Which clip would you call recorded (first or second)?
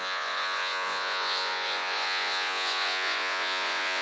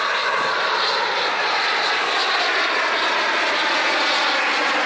second